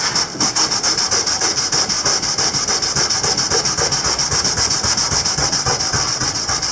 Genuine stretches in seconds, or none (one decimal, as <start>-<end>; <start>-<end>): 0.0-5.4